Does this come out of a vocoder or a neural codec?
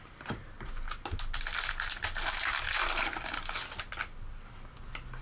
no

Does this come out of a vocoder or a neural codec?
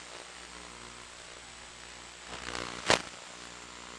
no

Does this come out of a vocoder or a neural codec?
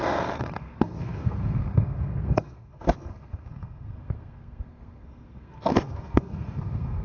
yes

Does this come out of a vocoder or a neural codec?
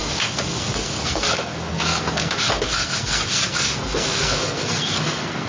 yes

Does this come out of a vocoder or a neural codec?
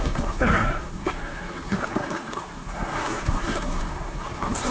yes